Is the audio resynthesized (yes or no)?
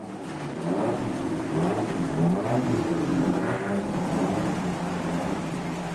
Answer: yes